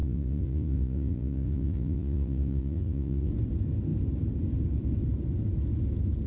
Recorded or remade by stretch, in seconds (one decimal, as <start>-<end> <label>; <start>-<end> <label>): 0.0-3.3 remade; 3.3-6.3 recorded